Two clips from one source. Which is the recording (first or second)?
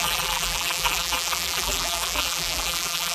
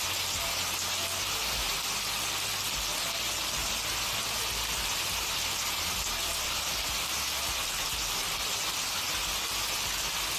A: second